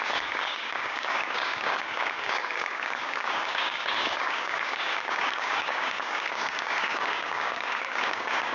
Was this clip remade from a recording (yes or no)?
yes